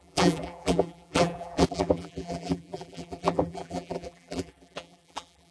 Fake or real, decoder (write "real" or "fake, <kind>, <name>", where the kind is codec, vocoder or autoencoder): fake, vocoder, BigVGAN v2